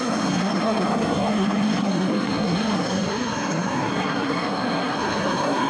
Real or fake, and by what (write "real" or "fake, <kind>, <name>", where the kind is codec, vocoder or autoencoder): fake, codec, SNAC